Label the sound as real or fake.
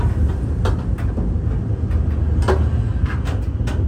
real